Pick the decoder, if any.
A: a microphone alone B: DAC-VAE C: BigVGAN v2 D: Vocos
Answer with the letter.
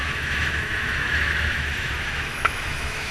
B